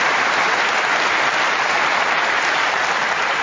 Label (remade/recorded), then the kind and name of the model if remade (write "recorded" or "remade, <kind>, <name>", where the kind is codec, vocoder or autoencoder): recorded